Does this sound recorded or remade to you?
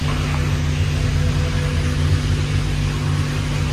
recorded